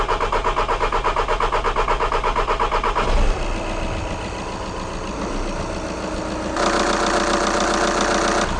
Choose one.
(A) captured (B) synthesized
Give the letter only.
A